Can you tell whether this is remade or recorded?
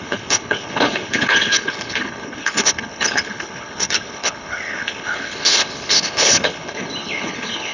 remade